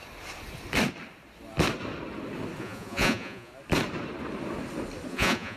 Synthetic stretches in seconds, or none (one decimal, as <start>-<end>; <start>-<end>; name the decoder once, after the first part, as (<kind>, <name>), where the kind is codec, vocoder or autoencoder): 2.6-3.5 (vocoder, Vocos); 5.1-5.6